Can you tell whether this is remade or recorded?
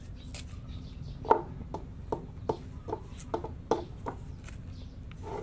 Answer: recorded